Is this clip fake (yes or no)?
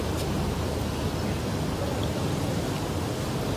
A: no